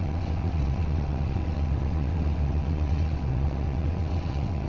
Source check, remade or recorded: remade